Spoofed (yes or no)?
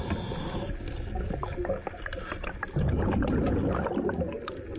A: no